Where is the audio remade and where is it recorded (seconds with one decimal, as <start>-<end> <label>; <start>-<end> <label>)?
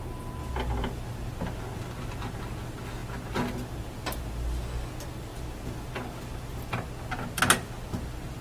0.0-8.4 recorded